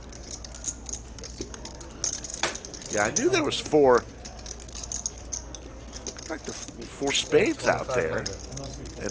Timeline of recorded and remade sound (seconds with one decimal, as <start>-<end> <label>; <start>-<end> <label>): 0.0-9.1 recorded